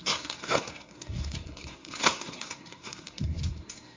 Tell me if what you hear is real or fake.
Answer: fake